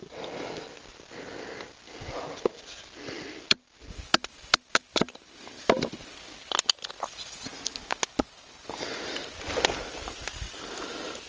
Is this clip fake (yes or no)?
no